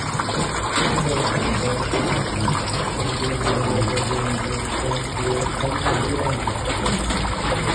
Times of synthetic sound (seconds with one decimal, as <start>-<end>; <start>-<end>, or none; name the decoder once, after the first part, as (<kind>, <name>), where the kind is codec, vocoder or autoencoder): none